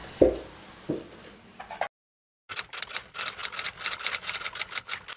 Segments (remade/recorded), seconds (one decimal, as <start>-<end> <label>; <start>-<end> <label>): 0.0-5.2 recorded

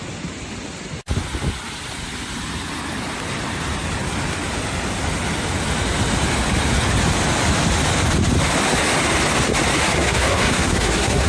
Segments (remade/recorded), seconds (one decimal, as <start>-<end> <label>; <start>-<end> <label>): 0.0-9.9 recorded; 9.9-11.3 remade

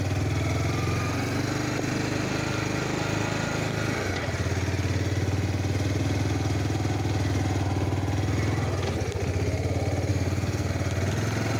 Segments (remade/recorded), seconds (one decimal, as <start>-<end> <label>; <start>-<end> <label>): 0.0-10.1 recorded; 10.1-10.7 remade; 10.7-11.6 recorded

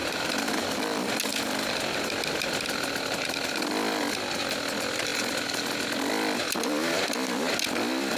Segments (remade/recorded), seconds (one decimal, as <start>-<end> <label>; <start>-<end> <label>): 0.0-0.6 remade; 0.6-8.2 recorded

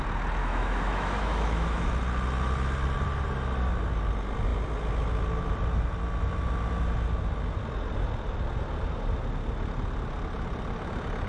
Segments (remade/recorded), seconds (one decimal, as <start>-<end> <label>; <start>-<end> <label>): 0.0-0.4 recorded; 0.4-1.9 remade; 1.9-11.3 recorded

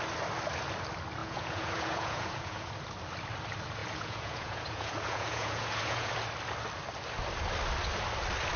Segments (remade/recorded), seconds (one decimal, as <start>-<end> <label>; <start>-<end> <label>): 0.0-1.2 recorded; 1.2-2.7 remade; 2.7-3.8 recorded; 3.8-6.1 remade; 6.1-8.6 recorded

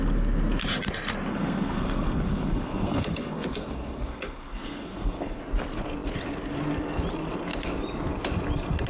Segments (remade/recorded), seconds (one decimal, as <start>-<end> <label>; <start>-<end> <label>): 0.0-1.3 recorded; 1.3-5.4 remade; 5.4-8.9 recorded

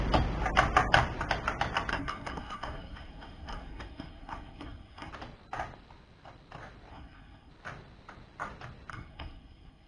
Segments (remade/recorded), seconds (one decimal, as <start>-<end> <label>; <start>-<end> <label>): 0.0-1.9 recorded; 1.9-5.1 remade; 5.1-6.9 recorded; 6.9-7.5 remade; 7.5-8.9 recorded; 8.9-9.9 remade